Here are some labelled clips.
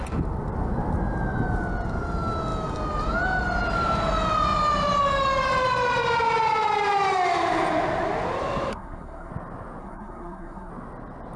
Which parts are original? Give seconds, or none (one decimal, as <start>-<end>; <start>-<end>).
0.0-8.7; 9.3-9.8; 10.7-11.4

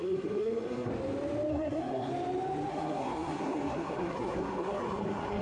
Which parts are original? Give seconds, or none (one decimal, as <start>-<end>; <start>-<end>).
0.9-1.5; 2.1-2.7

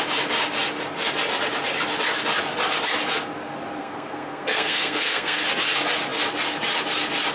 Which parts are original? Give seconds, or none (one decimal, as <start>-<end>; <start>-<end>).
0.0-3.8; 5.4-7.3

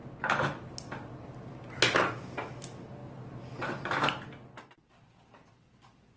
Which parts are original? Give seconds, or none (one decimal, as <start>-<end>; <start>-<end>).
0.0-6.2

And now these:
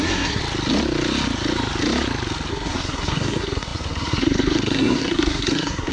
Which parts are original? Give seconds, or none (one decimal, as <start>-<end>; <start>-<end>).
0.4-2.5

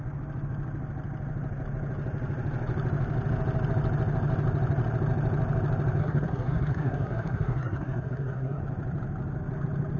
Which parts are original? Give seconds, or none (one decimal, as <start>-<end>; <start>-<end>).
0.0-6.0; 8.6-10.0

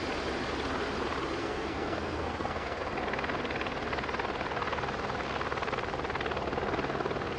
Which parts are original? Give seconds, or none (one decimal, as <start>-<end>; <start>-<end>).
0.0-1.4; 2.8-7.4

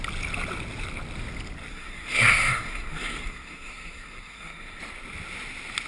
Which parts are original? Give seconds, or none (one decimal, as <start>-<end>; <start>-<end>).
0.0-1.7; 4.8-5.9